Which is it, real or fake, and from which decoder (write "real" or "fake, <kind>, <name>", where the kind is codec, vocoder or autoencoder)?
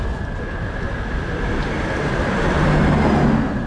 real